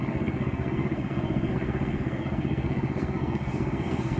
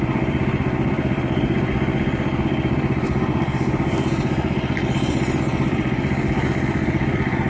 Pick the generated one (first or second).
first